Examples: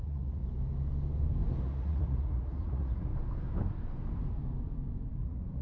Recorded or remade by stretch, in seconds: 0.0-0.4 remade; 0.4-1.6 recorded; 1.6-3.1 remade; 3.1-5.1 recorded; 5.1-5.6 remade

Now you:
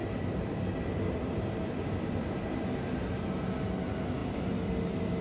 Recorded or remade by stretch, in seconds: 0.0-3.1 remade; 3.1-4.2 recorded; 4.2-4.7 remade; 4.7-5.2 recorded